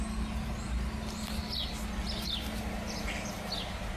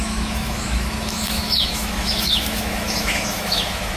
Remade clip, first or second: second